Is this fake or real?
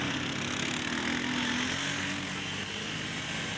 real